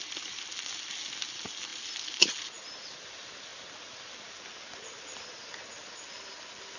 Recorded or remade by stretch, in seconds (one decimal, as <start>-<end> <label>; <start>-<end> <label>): 0.0-6.8 recorded